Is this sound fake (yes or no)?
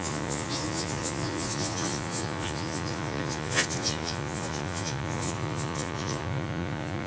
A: yes